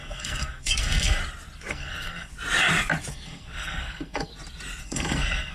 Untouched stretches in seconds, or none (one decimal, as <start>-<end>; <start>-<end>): 1.2-1.7; 2.3-3.1; 4.3-4.8